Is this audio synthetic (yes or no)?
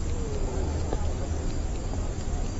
no